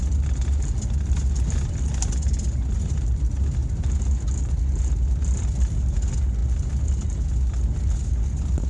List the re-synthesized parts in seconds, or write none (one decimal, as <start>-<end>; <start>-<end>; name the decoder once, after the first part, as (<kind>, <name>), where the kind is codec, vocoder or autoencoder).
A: none

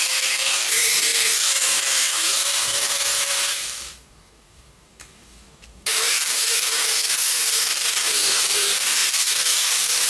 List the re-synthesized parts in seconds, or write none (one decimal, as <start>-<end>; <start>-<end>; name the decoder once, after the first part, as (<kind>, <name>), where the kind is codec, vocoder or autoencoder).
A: 0.0-10.1 (codec, DAC)

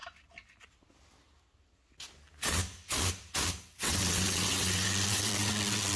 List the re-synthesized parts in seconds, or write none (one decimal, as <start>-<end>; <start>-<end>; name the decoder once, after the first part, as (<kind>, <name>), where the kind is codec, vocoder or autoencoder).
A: 3.6-6.0 (vocoder, WaveNeXt)

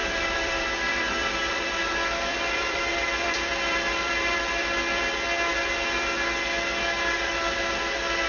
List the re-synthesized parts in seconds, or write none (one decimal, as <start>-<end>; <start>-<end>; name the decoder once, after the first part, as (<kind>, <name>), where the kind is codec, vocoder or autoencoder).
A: 0.0-5.0 (vocoder, BigVGAN v2)

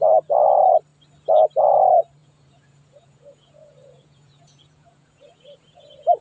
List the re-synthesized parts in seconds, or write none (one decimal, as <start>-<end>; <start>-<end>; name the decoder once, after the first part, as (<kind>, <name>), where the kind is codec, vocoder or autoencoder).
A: 2.2-6.2 (vocoder, Vocos)

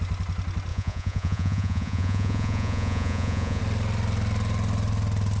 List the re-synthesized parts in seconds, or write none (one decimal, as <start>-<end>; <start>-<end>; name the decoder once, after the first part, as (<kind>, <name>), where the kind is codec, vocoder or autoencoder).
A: 0.7-3.6 (vocoder, Vocos)

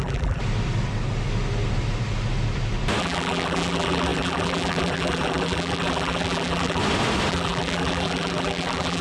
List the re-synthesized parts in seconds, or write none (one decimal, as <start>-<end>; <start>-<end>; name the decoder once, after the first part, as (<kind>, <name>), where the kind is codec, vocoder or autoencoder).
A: 0.0-0.4 (vocoder, BigVGAN v2); 3.0-6.8; 7.3-9.0

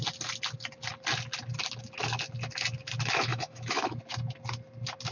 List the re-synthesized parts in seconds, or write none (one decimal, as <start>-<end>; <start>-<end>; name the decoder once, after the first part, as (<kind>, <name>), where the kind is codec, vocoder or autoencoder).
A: 3.3-4.0 (autoencoder, DAC-VAE)